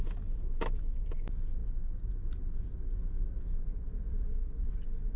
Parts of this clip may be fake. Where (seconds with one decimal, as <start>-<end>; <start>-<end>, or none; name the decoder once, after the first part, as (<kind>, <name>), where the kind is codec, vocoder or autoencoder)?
none